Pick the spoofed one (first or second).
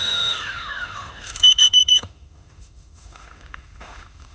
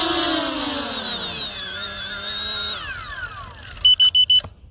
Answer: first